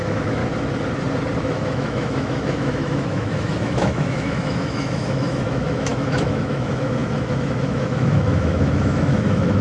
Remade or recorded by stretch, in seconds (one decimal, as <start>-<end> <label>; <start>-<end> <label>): 0.0-0.4 remade; 0.4-1.4 recorded; 1.4-9.6 remade